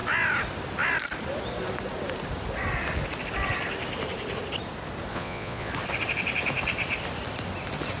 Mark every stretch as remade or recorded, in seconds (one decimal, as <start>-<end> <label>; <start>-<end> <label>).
0.0-5.1 recorded; 5.1-5.7 remade; 5.7-8.0 recorded